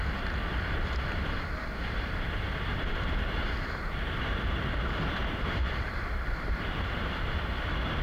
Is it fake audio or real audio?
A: fake